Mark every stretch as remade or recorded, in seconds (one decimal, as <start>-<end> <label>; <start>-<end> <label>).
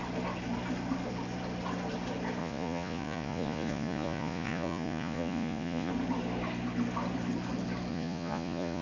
0.0-2.4 recorded; 2.4-5.9 remade; 5.9-7.9 recorded; 7.9-8.8 remade